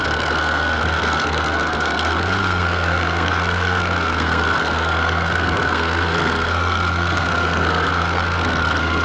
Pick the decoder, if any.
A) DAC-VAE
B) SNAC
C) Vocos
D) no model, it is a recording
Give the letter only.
B